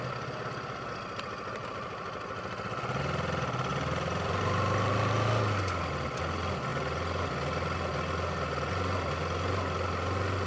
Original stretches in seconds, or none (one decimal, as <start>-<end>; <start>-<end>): 0.0-3.7; 4.4-10.5